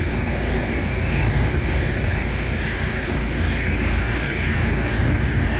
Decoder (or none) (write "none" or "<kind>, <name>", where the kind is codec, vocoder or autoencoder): codec, DAC